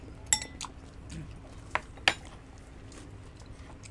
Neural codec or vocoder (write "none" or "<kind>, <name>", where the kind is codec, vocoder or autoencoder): none